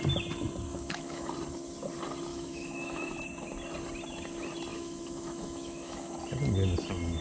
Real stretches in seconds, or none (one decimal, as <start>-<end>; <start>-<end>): 0.0-0.7; 1.3-2.3; 3.2-4.7; 6.2-7.2